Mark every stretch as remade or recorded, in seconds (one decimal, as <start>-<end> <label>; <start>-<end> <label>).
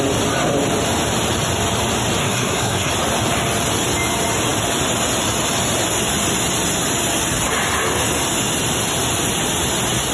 0.0-2.2 recorded; 2.2-2.9 remade; 2.9-10.1 recorded